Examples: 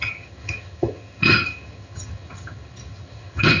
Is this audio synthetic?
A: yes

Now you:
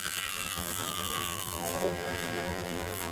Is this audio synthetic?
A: yes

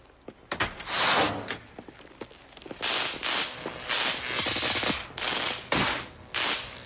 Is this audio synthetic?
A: no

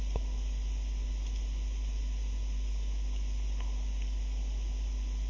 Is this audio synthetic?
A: no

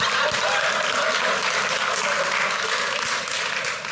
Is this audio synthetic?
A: no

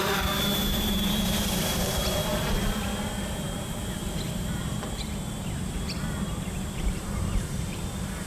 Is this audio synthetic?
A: yes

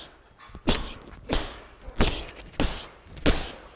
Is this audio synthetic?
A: no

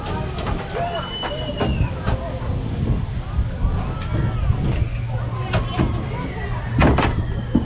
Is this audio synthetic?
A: no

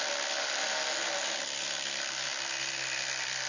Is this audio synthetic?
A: no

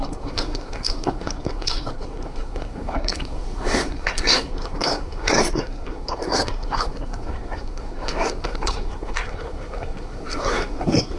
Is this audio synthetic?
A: yes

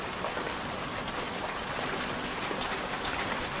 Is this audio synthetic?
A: no